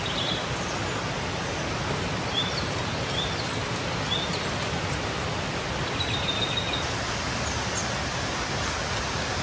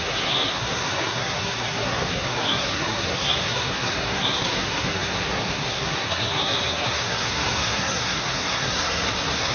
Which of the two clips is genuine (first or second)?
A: first